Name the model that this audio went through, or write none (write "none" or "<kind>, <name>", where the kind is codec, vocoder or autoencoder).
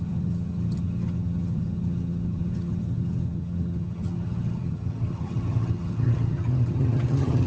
vocoder, HiFi-GAN